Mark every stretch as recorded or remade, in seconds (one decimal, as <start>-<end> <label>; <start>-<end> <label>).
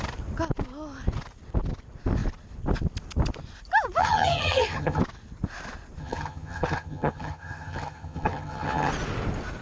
0.0-4.0 recorded; 4.0-5.0 remade; 5.0-6.0 recorded; 6.0-8.9 remade; 8.9-9.6 recorded